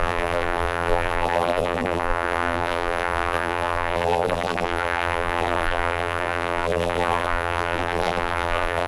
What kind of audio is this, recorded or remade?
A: remade